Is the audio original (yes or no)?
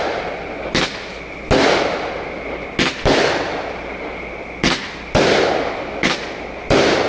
yes